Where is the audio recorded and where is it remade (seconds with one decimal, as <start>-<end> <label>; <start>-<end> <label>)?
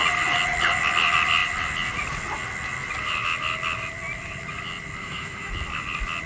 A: 0.0-5.0 recorded; 5.0-5.5 remade; 5.5-6.3 recorded